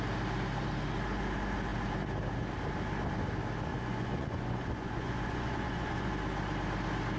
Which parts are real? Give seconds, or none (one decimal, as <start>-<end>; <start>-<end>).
0.0-3.7; 6.1-7.2